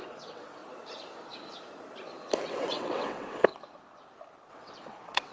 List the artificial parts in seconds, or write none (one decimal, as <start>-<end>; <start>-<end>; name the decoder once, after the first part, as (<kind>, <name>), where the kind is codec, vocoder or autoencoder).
0.0-0.6 (vocoder, WaveNeXt); 2.4-3.5; 4.5-5.3